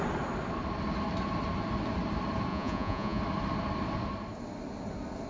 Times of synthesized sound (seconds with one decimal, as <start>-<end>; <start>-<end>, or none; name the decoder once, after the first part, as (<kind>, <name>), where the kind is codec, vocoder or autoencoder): 2.5-3.2 (vocoder, Vocos)

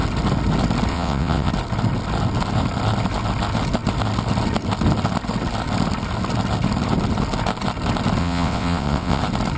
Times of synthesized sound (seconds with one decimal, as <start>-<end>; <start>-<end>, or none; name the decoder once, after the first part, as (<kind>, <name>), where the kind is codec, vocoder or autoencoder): 0.9-1.5 (vocoder, WaveNeXt); 8.2-9.2

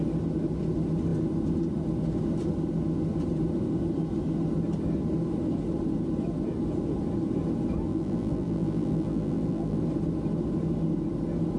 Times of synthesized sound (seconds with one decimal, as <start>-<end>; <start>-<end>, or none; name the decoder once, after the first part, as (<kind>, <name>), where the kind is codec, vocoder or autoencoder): 7.9-9.8 (vocoder, BigVGAN v2)

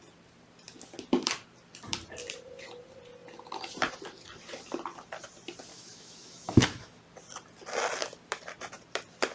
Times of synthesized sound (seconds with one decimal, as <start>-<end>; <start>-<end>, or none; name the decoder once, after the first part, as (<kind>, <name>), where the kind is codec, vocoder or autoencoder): 5.7-7.0 (autoencoder, DAC-VAE)

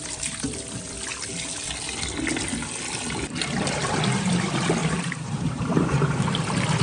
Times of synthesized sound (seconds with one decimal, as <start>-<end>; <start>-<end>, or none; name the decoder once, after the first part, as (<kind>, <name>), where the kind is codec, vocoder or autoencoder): 4.8-5.9 (vocoder, BigVGAN v2)